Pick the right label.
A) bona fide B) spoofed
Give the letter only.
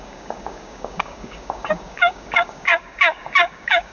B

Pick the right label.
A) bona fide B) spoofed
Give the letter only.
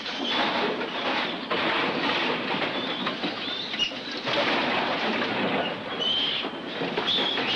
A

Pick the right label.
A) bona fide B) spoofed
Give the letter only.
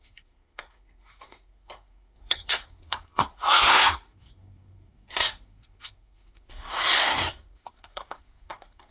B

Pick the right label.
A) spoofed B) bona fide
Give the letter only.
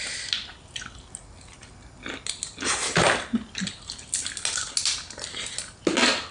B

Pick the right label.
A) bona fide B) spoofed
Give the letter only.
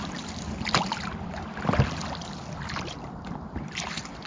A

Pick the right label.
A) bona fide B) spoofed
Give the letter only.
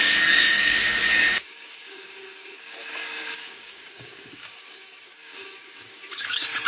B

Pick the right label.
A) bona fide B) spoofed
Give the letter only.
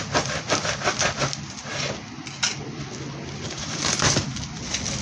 A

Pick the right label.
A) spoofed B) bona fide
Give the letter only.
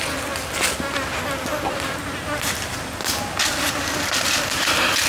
B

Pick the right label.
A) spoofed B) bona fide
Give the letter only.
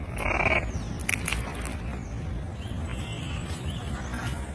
B